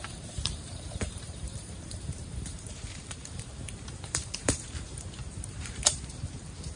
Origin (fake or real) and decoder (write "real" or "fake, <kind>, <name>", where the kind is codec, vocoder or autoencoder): fake, vocoder, BigVGAN v2